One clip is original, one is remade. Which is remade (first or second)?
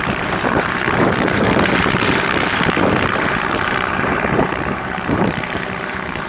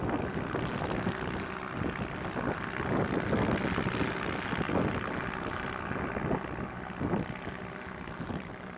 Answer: first